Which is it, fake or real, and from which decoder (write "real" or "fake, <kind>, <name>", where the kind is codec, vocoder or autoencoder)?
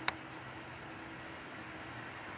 real